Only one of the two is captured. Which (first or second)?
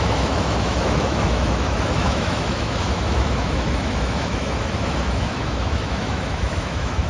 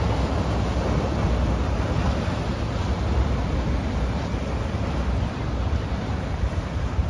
second